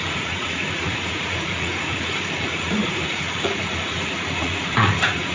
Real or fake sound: fake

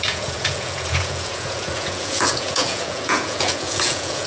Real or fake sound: fake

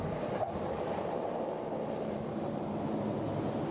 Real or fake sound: real